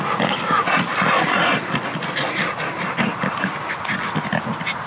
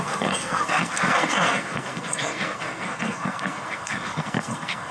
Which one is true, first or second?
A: first